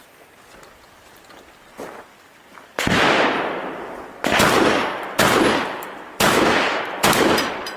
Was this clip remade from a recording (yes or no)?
yes